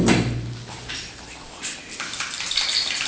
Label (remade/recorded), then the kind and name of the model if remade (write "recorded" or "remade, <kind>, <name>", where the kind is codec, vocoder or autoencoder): recorded